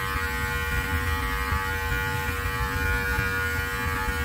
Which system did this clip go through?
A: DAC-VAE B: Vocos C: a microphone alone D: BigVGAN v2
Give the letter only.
C